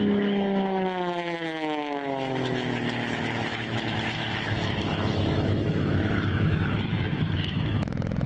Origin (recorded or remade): remade